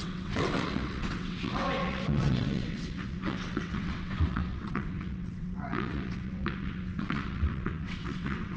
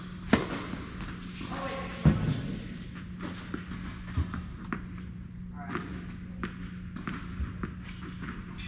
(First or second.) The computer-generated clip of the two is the first